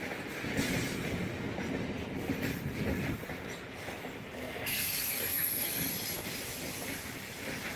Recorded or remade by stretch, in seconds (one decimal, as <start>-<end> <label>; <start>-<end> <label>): 0.0-4.4 recorded; 4.4-5.9 remade; 5.9-7.8 recorded